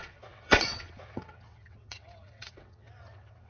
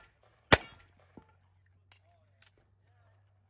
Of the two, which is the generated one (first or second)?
first